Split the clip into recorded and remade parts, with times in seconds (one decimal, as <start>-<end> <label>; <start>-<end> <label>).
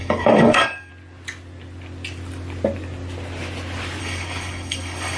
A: 0.0-0.9 remade; 0.9-4.0 recorded; 4.0-5.2 remade